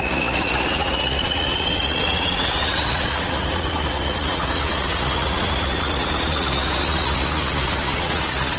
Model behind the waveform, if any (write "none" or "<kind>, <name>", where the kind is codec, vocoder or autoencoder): vocoder, Vocos